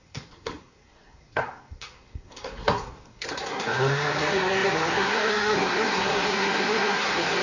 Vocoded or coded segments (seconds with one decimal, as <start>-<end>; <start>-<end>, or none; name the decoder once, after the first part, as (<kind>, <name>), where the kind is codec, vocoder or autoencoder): 0.0-7.4 (codec, SNAC)